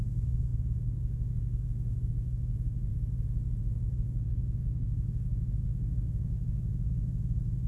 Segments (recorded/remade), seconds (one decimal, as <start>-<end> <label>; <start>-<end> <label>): 0.0-2.9 remade; 2.9-3.6 recorded; 3.6-7.7 remade